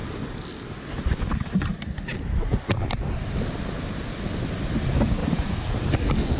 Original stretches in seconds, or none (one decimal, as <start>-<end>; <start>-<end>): 0.0-6.4